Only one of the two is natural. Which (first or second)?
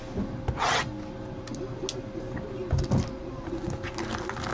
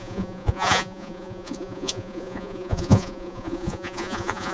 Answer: first